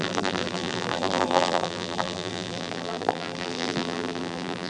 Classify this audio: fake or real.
fake